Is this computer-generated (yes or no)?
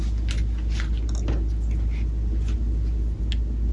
no